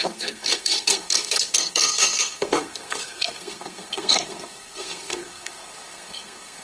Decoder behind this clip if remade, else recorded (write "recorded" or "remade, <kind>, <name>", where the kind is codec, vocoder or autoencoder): remade, codec, SNAC